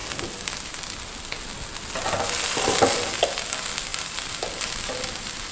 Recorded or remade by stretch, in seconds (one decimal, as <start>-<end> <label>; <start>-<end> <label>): 0.0-3.9 recorded; 3.9-5.5 remade